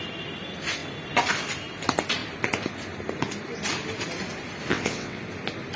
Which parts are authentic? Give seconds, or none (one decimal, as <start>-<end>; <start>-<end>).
0.0-4.7; 5.2-5.8